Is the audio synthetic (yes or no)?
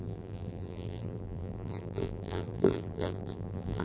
yes